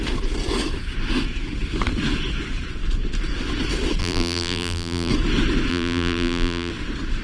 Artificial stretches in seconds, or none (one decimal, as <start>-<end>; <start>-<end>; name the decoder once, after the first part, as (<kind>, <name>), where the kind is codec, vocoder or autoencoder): 4.0-5.1 (vocoder, BigVGAN v2); 5.7-6.7